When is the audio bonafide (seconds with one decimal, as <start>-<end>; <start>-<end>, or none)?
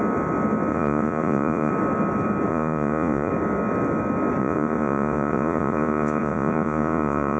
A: 0.0-0.7; 1.7-2.5; 3.3-4.4